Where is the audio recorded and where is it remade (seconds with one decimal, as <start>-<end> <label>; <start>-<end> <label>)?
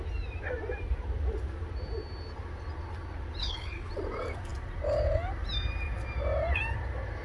0.0-3.4 recorded; 3.4-3.9 remade; 3.9-7.2 recorded